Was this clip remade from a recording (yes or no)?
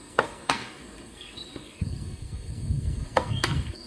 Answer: yes